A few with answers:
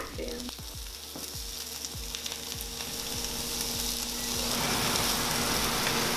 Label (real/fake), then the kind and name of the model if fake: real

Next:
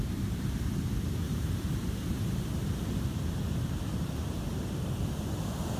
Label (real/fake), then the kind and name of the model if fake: fake, vocoder, BigVGAN v2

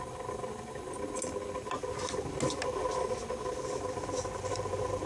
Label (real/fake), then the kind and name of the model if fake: real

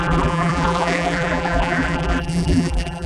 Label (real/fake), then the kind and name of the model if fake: fake, vocoder, BigVGAN v2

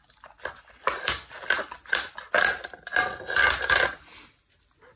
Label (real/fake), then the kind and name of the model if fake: real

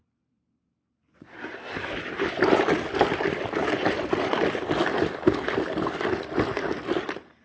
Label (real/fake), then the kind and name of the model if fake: real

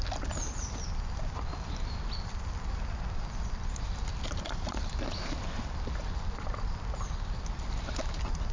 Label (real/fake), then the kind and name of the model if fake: real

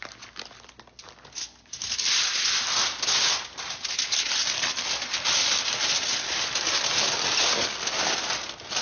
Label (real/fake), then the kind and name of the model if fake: real